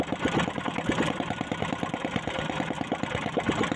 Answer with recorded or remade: remade